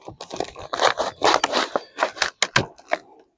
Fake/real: real